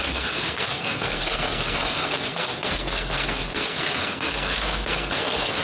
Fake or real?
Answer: fake